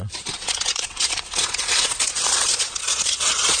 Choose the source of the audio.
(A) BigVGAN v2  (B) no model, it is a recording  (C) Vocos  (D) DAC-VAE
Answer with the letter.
C